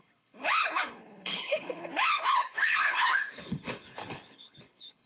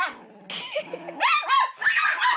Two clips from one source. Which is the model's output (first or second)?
first